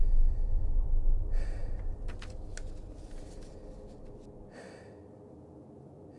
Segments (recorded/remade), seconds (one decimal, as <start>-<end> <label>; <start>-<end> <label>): 0.0-6.2 recorded